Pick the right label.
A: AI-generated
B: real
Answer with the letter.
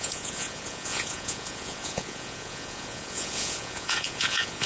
A